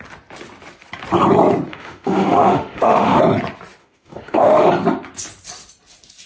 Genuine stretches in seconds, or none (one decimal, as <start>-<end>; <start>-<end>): 0.0-1.7; 3.2-3.8; 4.7-6.3